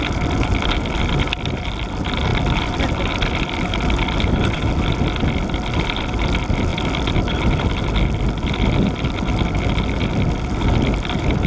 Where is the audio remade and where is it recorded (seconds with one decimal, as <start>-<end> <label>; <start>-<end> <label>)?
0.0-11.5 recorded